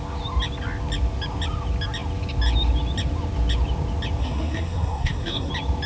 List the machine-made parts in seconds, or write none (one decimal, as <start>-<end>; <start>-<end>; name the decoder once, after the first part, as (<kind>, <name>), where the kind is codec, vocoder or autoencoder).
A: 4.2-5.5 (codec, SNAC)